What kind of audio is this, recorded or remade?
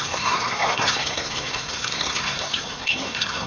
remade